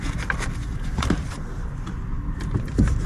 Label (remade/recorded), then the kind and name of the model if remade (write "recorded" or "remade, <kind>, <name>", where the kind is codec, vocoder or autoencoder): remade, vocoder, BigVGAN v2